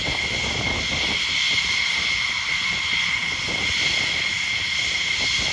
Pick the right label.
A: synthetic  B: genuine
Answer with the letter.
B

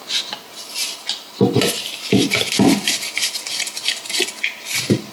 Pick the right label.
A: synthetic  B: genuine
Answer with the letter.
B